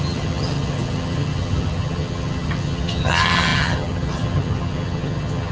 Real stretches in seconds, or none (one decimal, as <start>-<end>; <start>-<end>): none